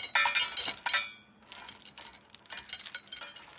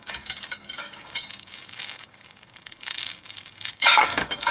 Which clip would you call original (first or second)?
first